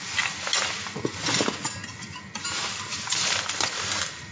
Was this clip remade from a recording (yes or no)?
no